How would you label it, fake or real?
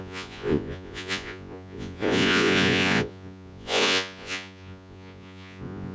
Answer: fake